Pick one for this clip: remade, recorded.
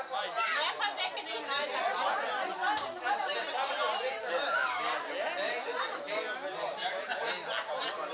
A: recorded